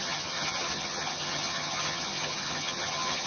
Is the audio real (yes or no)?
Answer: no